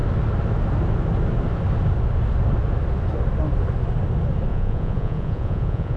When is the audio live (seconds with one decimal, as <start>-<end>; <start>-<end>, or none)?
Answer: 0.0-4.5